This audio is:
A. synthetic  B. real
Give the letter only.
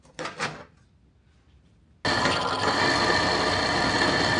B